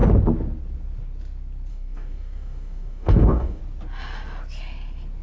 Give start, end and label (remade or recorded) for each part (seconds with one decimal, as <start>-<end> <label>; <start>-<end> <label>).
0.0-1.7 recorded; 1.7-3.6 remade; 3.6-5.2 recorded